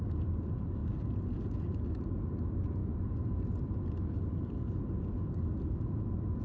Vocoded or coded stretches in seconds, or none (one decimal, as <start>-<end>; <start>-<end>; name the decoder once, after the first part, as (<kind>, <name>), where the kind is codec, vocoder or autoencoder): none